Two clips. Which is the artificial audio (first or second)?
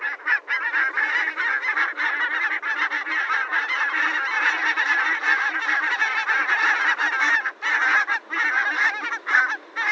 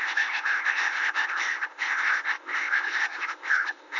second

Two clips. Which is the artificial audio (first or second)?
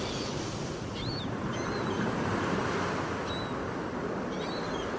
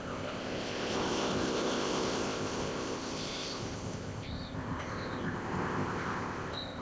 second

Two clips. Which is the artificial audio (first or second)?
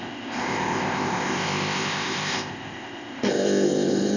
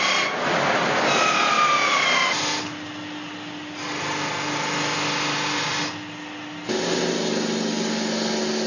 first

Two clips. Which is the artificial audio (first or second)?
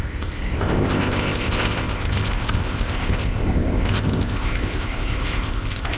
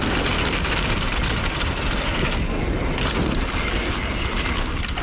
first